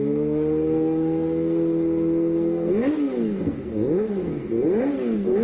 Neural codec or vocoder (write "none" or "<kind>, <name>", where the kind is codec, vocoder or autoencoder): codec, SNAC